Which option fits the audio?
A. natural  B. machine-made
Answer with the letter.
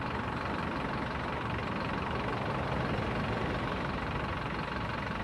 B